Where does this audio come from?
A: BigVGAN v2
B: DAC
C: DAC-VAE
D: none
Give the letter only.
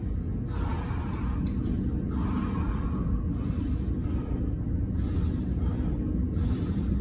D